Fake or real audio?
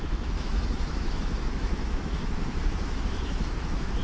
fake